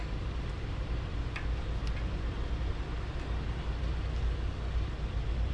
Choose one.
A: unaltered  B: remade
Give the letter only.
A